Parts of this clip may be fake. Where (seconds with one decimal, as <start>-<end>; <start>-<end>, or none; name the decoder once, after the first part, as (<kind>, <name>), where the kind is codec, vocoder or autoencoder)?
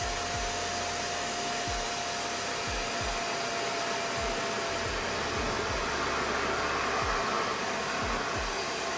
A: none